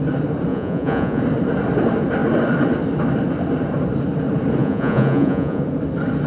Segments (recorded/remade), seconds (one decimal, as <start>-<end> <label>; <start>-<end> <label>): 0.0-0.5 recorded; 0.5-1.2 remade; 1.2-4.6 recorded; 4.6-5.6 remade; 5.6-6.3 recorded